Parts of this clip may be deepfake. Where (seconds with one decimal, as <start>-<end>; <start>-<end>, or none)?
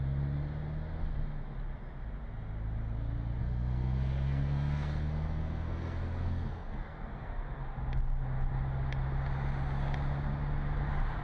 3.4-7.6